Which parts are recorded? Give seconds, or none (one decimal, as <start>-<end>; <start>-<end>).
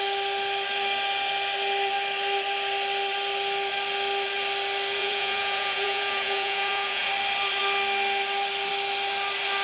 0.0-5.0; 7.1-9.6